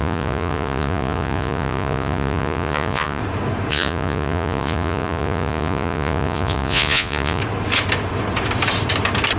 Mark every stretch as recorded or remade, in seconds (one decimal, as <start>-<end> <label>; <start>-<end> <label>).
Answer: 0.0-3.2 remade; 3.2-3.7 recorded; 3.7-7.4 remade; 7.4-9.4 recorded